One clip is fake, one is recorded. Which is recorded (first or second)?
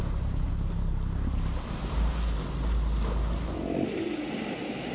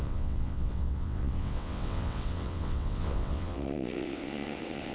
first